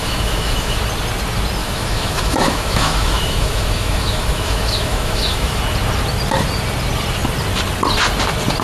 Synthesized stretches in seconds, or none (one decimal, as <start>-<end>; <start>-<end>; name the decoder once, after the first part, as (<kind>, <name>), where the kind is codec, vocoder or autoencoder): 0.0-0.8 (autoencoder, DAC-VAE); 1.6-5.6